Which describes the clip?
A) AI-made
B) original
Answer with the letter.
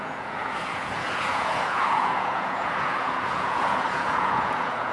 A